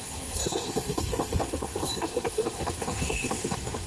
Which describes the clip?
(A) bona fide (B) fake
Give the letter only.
B